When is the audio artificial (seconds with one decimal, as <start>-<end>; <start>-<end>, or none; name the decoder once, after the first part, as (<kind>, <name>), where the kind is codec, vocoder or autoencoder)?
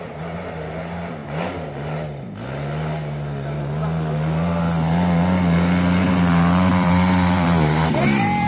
0.0-1.2 (vocoder, BigVGAN v2); 6.1-8.5